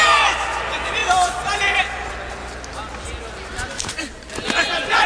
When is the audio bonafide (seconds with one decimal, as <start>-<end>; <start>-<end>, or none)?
0.0-5.1